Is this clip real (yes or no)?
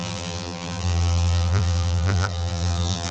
no